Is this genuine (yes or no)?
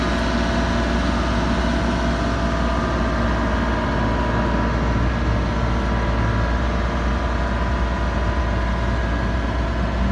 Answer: yes